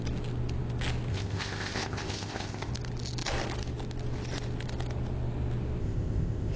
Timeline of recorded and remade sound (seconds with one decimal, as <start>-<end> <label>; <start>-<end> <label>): 0.0-1.1 recorded; 1.1-2.7 remade; 2.7-5.8 recorded; 5.8-6.6 remade